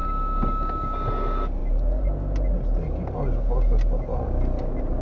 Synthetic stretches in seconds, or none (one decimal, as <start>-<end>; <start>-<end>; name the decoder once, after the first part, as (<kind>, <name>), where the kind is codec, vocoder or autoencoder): none